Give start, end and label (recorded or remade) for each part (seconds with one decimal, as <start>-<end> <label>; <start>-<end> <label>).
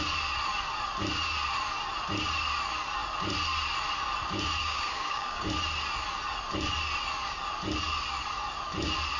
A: 0.0-4.6 recorded; 4.6-5.5 remade; 5.5-9.2 recorded